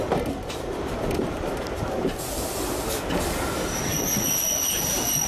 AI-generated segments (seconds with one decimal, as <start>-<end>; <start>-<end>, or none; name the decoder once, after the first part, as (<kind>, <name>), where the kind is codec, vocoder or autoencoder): none